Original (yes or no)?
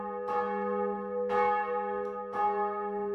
yes